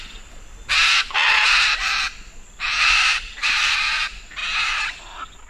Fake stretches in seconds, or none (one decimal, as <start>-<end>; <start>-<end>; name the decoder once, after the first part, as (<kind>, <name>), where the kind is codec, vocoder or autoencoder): 3.1-3.7 (vocoder, BigVGAN v2)